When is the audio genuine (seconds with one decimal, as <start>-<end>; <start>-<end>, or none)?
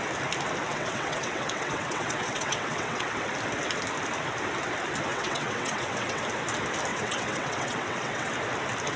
0.0-0.7; 3.3-5.1; 6.2-6.9; 8.3-9.0